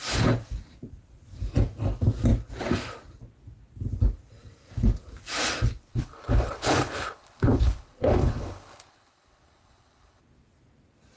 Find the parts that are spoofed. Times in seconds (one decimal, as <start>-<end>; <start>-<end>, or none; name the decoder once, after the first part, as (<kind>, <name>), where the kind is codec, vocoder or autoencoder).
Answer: 5.9-10.2 (codec, HILCodec)